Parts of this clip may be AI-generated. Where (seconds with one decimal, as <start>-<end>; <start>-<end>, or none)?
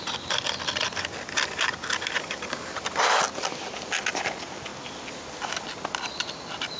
none